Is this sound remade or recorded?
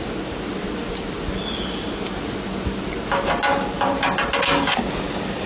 recorded